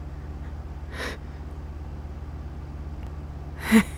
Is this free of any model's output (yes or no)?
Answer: yes